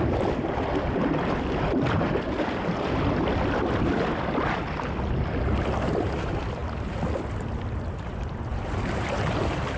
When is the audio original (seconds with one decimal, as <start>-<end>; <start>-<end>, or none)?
0.0-8.5; 9.4-9.8